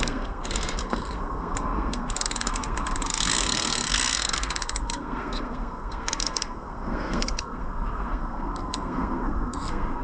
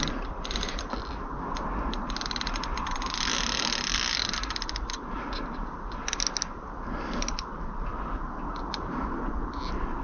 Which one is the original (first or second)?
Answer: second